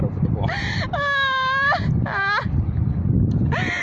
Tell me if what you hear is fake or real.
real